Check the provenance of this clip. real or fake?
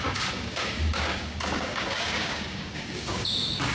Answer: fake